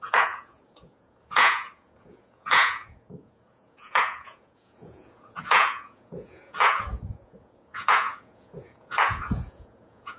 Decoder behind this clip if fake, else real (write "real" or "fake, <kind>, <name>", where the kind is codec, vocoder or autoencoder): fake, vocoder, Vocos